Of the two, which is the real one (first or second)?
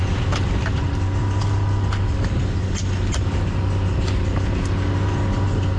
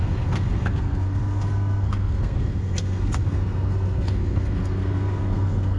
first